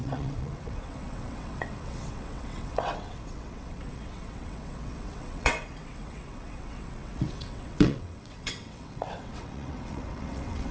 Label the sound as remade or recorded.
remade